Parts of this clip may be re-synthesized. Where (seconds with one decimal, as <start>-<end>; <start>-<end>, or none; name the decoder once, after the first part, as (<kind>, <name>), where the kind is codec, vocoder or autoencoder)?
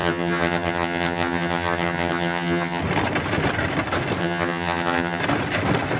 0.0-2.8 (vocoder, HiFi-GAN); 4.2-5.2